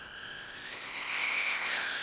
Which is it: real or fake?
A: fake